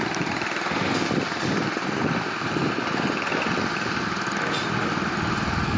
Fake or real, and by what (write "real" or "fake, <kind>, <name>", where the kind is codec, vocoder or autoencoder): real